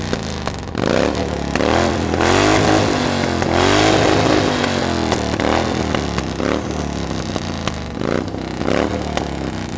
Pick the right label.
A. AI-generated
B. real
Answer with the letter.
B